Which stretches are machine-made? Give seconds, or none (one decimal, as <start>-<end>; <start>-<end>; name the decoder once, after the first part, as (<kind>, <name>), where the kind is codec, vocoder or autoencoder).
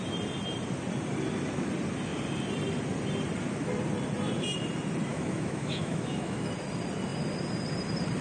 5.1-6.5 (autoencoder, DAC-VAE)